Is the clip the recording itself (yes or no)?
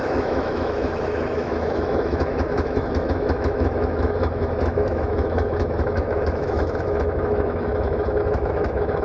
no